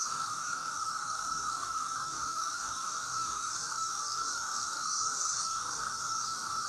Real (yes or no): no